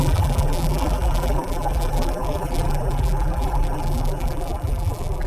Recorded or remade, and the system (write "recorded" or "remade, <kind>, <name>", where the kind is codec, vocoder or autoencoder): remade, vocoder, BigVGAN v2